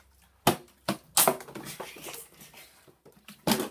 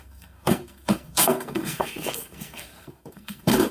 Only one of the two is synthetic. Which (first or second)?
second